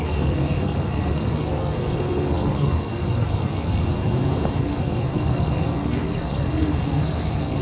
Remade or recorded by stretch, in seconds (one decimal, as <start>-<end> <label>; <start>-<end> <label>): 0.0-3.8 remade; 3.8-4.6 recorded; 4.6-7.6 remade